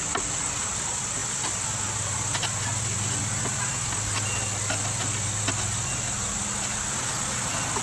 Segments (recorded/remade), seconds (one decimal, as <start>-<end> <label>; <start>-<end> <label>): 0.0-7.8 recorded